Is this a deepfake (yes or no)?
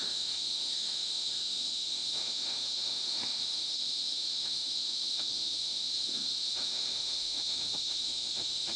yes